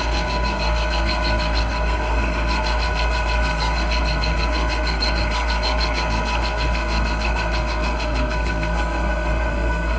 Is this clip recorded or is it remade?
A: remade